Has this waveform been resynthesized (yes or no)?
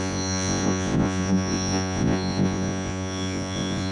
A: yes